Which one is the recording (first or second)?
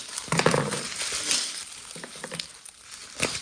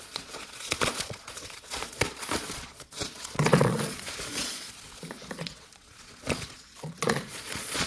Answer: first